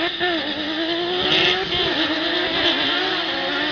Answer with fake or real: real